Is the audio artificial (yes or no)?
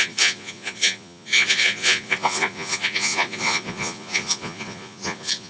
yes